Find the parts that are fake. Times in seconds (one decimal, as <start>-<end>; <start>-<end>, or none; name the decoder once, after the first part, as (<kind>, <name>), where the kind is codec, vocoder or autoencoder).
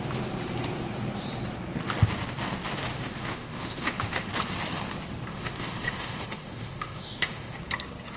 2.9-4.3 (autoencoder, DAC-VAE); 5.3-7.6